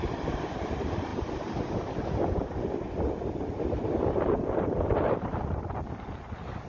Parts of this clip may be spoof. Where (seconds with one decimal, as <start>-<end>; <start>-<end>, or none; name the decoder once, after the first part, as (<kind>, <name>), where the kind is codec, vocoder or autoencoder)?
none